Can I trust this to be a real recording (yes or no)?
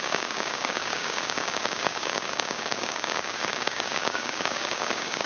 no